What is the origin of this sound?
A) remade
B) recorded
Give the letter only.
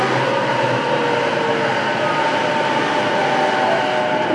B